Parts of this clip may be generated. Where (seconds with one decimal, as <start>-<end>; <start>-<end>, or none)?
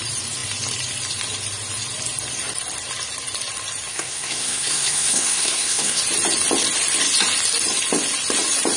3.9-6.0